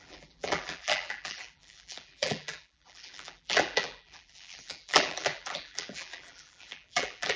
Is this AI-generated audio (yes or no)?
yes